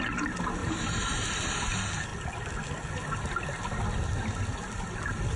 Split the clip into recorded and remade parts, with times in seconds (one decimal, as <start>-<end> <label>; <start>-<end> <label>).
0.0-0.6 recorded; 0.6-1.3 remade; 1.3-5.4 recorded